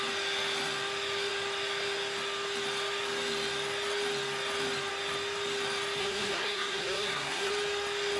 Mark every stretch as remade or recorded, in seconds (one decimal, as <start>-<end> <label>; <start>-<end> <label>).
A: 0.0-6.0 recorded; 6.0-7.5 remade; 7.5-8.2 recorded